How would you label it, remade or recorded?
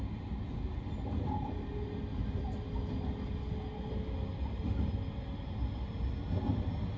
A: recorded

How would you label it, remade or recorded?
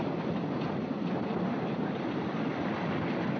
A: recorded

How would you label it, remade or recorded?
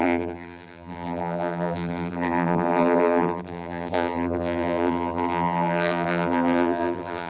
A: remade